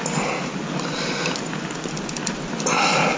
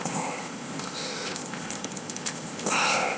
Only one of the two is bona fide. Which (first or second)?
first